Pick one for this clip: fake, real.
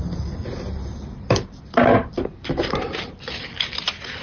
real